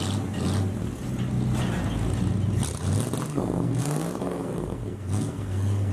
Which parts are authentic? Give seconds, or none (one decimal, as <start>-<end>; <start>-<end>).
0.0-3.3